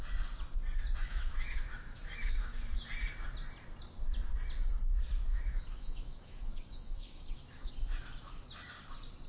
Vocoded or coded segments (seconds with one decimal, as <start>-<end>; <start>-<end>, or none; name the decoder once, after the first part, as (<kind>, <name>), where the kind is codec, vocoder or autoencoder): 1.0-2.9 (autoencoder, DAC-VAE); 5.3-7.7